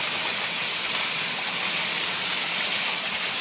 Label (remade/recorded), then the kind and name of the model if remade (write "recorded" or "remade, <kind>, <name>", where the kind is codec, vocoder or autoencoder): recorded